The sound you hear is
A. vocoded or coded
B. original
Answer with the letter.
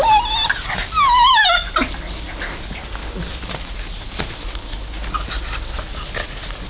B